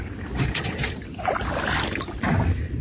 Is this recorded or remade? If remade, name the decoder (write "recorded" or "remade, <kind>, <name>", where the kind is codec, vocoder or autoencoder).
recorded